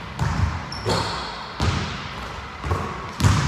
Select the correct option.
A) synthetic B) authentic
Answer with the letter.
B